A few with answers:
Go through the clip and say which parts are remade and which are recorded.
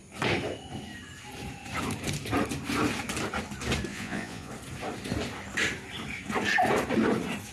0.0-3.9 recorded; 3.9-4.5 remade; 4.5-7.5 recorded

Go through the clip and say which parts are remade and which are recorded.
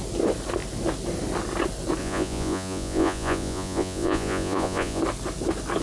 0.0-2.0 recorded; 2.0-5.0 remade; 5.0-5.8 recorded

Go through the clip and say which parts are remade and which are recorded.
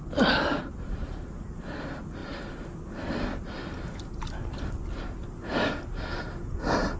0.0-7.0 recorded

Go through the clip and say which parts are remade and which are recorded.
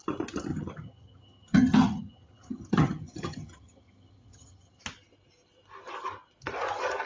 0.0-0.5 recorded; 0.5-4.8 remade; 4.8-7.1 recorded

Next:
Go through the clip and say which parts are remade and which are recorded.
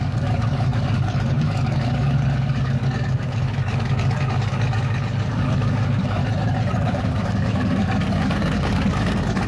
0.0-6.2 remade; 6.2-6.7 recorded; 6.7-9.5 remade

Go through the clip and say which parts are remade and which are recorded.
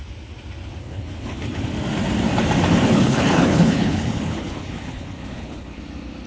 0.0-0.8 recorded; 0.8-1.7 remade; 1.7-2.9 recorded; 2.9-5.8 remade; 5.8-6.3 recorded